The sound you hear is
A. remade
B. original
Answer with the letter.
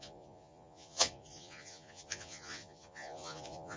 A